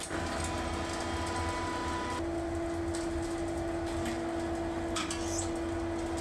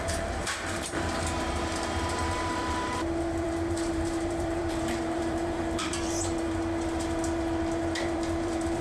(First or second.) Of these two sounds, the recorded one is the first